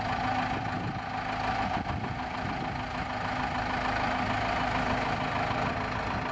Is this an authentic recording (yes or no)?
yes